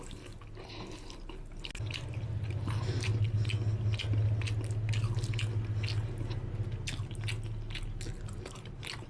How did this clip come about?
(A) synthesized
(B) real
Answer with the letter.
B